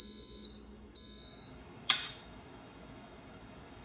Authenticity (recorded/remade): remade